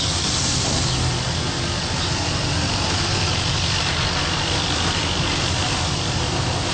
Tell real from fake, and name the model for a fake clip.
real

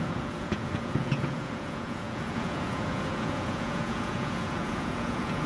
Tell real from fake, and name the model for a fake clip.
fake, vocoder, Vocos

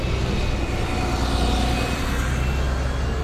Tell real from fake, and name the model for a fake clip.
real